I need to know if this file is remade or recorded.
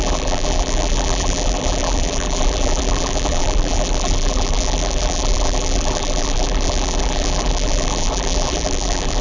remade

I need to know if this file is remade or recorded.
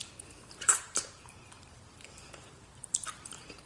remade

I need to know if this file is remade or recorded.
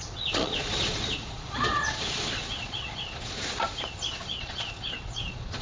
remade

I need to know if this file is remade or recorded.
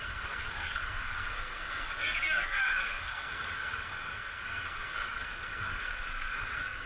remade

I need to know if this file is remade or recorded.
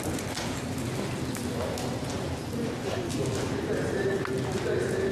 recorded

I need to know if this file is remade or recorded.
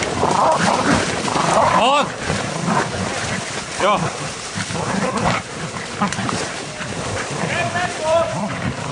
remade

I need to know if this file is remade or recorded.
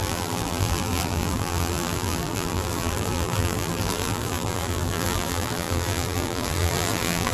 remade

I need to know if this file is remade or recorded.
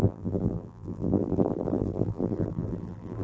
remade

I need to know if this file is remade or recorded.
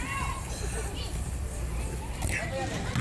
recorded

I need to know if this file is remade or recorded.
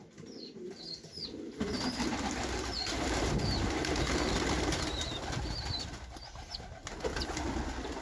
recorded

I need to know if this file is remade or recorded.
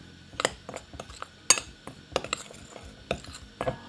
recorded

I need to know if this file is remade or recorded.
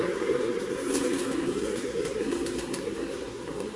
remade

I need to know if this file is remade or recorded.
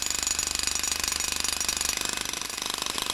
recorded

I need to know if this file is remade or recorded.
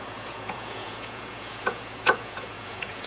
remade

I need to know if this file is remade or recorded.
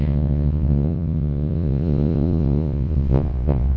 remade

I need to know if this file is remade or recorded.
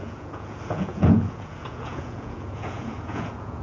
remade